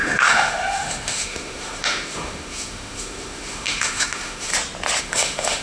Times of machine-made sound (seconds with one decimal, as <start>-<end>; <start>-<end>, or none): 0.0-4.5; 5.0-5.6